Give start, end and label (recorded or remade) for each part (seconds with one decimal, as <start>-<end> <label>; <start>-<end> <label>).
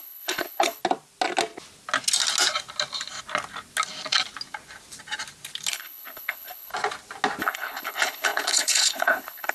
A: 0.0-0.8 remade; 0.8-5.7 recorded; 5.7-6.7 remade; 6.7-7.4 recorded; 7.4-9.5 remade